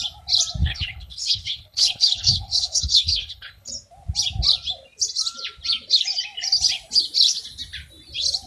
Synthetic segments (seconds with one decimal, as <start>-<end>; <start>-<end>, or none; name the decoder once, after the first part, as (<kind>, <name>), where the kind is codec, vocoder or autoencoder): 0.6-3.7 (codec, HILCodec)